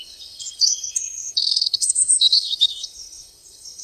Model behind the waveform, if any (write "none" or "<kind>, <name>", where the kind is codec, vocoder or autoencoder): codec, SNAC